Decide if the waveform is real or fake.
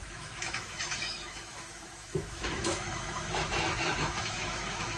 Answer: fake